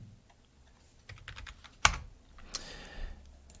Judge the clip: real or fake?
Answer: real